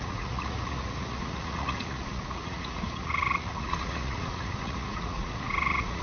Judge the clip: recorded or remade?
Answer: remade